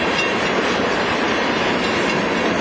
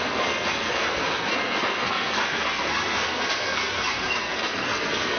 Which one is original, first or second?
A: first